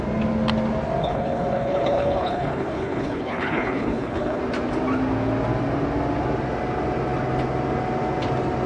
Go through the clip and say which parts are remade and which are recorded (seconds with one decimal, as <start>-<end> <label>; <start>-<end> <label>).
0.0-1.0 recorded; 1.0-4.4 remade; 4.4-8.7 recorded

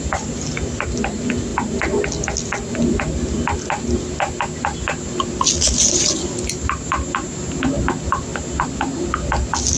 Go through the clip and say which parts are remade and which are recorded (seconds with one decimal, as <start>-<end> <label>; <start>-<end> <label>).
0.0-9.8 recorded

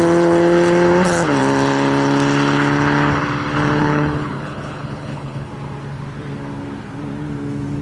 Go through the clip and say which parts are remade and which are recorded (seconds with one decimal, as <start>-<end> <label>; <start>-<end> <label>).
0.0-3.8 recorded; 3.8-5.5 remade; 5.5-7.8 recorded

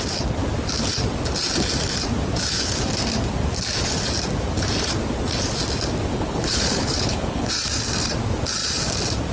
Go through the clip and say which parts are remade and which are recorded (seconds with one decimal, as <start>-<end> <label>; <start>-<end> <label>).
0.0-6.1 recorded; 6.1-7.5 remade; 7.5-9.3 recorded